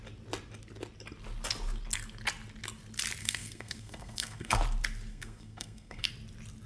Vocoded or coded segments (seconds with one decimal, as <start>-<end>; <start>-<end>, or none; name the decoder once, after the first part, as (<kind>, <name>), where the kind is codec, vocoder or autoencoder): 3.2-4.6 (codec, SNAC); 5.1-6.1